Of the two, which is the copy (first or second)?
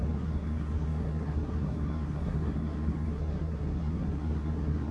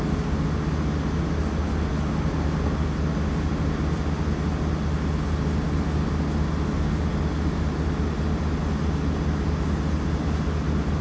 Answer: first